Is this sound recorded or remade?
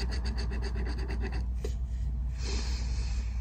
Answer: recorded